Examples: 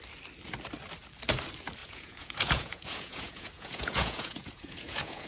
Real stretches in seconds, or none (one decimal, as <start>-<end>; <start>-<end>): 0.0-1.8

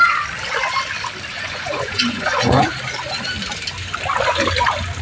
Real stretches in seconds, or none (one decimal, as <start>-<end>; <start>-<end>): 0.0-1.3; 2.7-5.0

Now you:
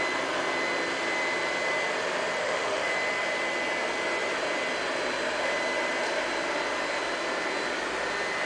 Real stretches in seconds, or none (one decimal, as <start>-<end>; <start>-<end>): 0.0-2.4; 2.9-8.5

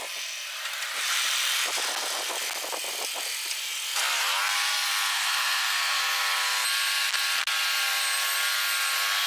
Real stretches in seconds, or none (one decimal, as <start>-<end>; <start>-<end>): 0.0-5.1; 6.0-9.3

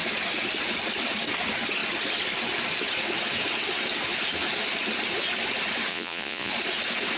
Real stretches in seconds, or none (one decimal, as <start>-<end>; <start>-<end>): 0.0-5.9; 6.5-7.2

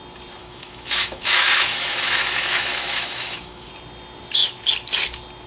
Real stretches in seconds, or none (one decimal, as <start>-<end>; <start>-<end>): 0.0-0.4; 3.7-5.5

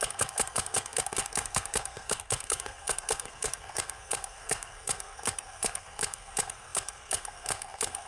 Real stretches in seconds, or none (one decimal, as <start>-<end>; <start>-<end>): none

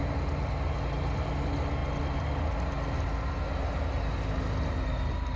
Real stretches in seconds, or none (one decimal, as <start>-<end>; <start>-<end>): 0.0-5.4